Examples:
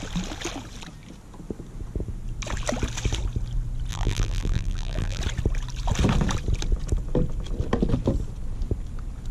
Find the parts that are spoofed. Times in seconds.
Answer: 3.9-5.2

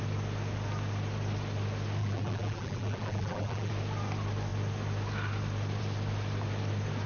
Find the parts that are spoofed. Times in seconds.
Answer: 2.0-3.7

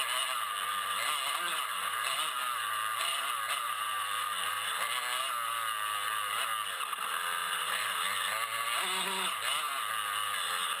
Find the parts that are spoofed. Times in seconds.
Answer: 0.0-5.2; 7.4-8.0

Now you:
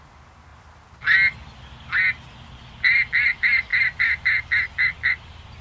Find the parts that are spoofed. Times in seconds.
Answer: none

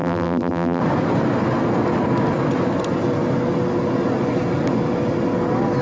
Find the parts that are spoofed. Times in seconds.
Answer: 0.0-0.8